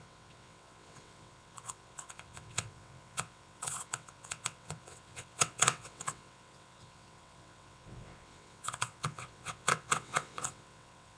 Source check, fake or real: fake